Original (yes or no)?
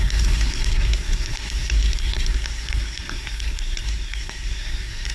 no